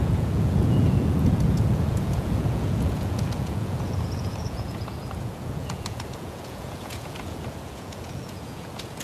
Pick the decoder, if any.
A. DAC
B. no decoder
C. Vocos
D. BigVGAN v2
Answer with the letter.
C